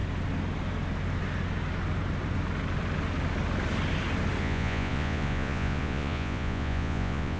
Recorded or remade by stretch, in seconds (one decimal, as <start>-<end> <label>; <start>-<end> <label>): 0.0-4.4 recorded; 4.4-7.4 remade